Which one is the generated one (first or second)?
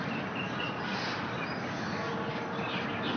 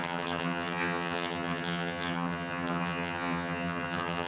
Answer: second